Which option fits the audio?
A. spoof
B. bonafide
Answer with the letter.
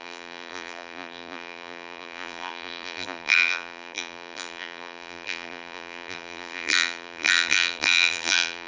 A